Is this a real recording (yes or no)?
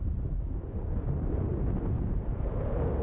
yes